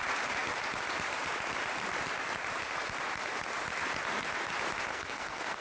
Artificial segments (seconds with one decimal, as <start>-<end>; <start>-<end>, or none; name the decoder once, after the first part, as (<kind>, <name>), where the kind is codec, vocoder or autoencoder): 4.9-5.6 (codec, SNAC)